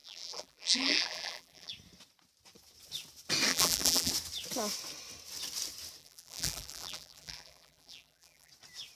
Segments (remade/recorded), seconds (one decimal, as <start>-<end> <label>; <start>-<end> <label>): 0.0-1.7 remade; 1.7-3.5 recorded; 3.5-4.1 remade; 4.1-6.0 recorded; 6.0-8.5 remade; 8.5-8.9 recorded